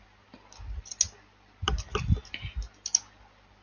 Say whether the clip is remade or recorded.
recorded